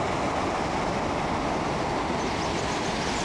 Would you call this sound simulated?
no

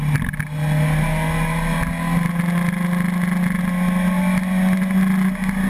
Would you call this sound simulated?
no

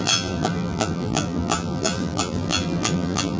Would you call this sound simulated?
yes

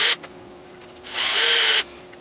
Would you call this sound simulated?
no